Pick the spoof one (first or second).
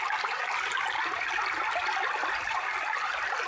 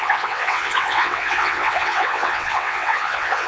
second